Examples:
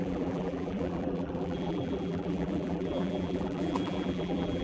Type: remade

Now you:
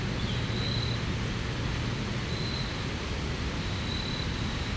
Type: recorded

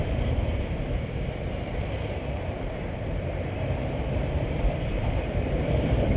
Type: remade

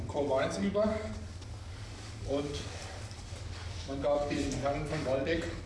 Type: remade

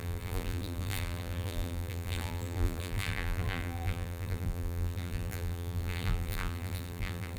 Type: remade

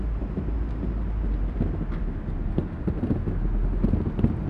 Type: recorded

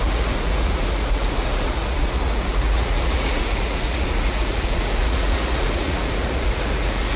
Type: remade